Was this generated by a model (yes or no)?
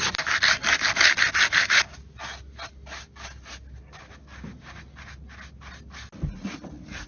no